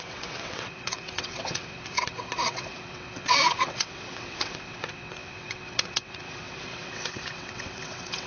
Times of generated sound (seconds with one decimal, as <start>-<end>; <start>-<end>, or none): 0.0-8.3